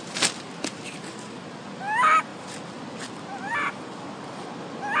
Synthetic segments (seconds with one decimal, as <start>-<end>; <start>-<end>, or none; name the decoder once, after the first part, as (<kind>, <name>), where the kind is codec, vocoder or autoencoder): none